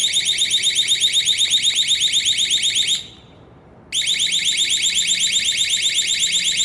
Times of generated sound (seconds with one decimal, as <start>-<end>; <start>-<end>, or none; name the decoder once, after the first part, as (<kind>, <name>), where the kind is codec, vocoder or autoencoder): 0.0-3.8 (vocoder, BigVGAN v2); 4.4-6.6

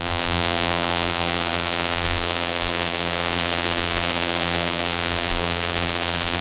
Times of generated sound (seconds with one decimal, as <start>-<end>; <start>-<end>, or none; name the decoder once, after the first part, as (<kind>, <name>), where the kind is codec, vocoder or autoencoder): 0.0-6.4 (vocoder, BigVGAN v2)

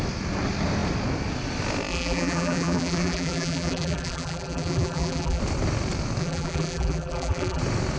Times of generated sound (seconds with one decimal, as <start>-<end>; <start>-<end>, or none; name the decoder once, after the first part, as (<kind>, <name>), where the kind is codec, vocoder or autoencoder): 1.9-5.4 (vocoder, BigVGAN v2); 6.2-7.6

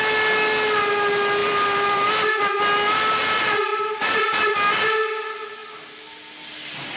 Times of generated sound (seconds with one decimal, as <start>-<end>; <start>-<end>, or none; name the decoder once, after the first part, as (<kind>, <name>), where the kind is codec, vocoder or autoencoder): 1.4-2.1 (vocoder, BigVGAN v2); 3.7-4.5; 5.6-7.0

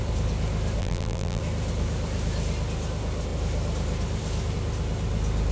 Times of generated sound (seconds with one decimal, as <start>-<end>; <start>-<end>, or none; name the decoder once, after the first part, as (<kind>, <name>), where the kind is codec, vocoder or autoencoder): 0.8-1.4 (vocoder, BigVGAN v2)

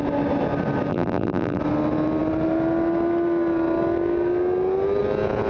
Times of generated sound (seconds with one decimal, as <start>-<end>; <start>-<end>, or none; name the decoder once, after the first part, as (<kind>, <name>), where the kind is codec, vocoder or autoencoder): 0.9-1.6 (vocoder, BigVGAN v2)